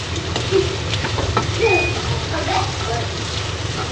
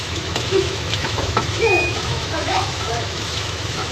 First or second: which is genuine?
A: first